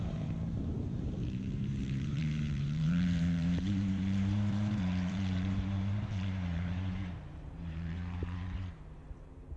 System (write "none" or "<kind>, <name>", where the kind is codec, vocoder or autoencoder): vocoder, BigVGAN v2